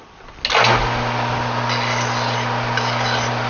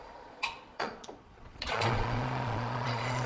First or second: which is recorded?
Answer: first